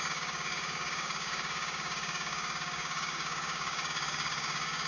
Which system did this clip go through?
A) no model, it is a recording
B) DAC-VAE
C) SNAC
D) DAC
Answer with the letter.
D